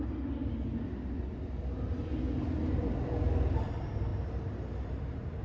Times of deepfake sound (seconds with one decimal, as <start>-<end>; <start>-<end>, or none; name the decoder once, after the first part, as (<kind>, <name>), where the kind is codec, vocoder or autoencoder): none